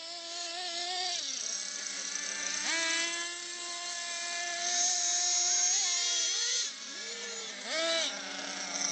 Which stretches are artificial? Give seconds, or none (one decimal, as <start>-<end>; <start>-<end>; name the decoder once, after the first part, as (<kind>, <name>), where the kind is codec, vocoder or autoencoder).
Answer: none